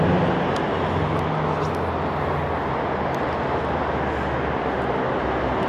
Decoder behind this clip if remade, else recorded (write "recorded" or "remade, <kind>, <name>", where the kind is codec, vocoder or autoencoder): recorded